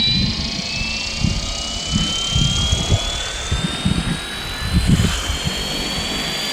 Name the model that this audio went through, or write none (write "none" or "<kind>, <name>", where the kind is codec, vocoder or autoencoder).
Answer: none